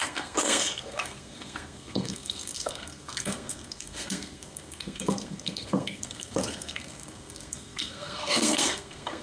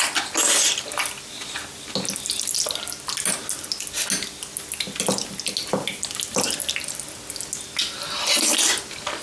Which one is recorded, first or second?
second